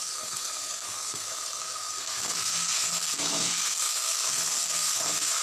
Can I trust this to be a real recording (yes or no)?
no